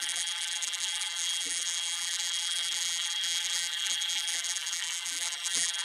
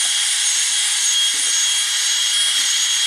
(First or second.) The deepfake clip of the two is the first